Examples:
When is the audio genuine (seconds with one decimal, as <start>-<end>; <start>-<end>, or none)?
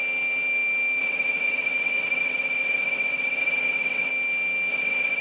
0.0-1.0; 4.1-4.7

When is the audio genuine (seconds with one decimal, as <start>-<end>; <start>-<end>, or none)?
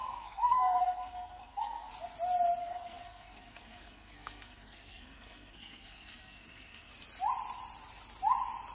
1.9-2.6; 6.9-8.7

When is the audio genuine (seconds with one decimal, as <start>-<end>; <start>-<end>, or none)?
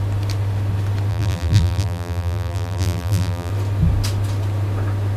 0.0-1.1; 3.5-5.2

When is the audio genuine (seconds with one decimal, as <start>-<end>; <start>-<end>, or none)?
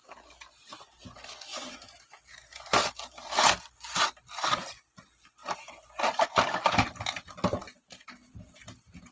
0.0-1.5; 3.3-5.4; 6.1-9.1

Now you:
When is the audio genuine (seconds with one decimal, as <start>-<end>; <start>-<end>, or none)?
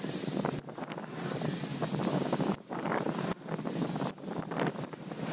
0.0-2.1; 3.0-5.3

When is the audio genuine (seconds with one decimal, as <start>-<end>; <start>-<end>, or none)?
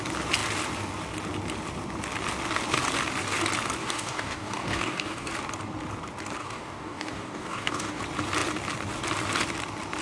0.0-3.8; 5.3-6.4; 8.0-10.0